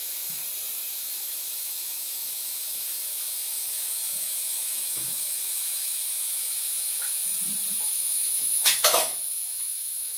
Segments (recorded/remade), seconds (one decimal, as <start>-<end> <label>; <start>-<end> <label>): 0.0-0.4 remade; 0.4-0.9 recorded; 0.9-7.2 remade; 7.2-7.8 recorded; 7.8-10.2 remade